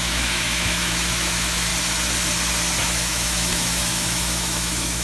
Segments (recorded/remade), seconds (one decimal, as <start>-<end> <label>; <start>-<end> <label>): 0.0-1.7 remade; 1.7-2.8 recorded; 2.8-5.0 remade